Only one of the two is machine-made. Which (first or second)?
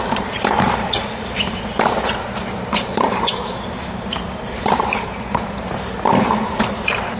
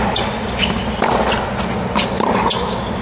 first